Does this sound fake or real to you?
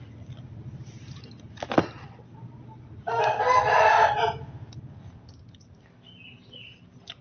real